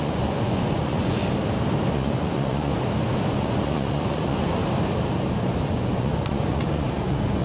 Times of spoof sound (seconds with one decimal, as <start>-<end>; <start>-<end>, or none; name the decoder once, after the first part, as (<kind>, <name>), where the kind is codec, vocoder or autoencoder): 0.0-1.2 (vocoder, Vocos); 1.9-2.7; 3.3-4.6; 5.7-7.4